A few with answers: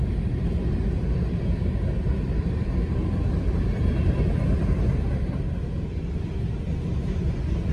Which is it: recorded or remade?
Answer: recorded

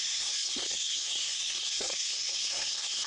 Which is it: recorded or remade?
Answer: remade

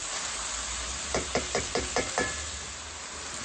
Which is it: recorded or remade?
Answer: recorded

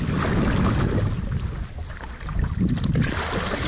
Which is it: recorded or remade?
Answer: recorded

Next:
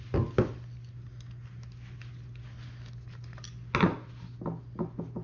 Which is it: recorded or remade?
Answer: recorded